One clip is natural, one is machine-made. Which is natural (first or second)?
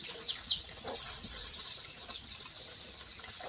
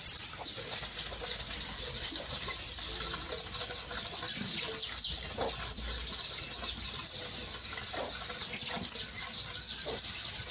second